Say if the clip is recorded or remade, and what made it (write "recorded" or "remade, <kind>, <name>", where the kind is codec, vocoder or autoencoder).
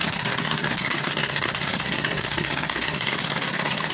remade, codec, SNAC